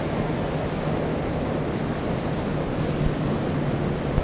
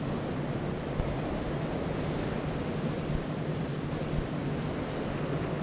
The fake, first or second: second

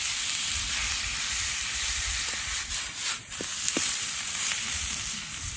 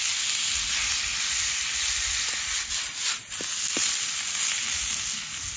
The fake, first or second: first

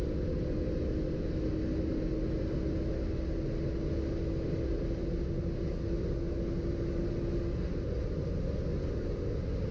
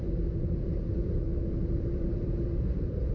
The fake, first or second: second